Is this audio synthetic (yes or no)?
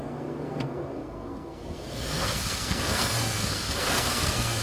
yes